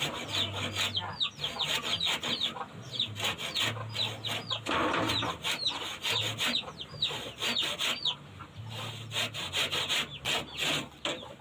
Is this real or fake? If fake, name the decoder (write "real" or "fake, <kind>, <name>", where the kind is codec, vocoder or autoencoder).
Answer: real